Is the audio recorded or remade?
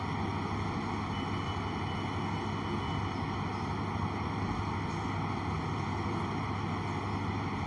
recorded